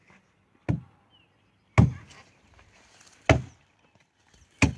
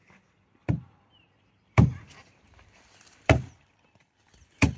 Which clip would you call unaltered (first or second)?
first